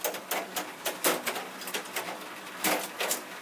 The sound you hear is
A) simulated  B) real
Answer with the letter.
B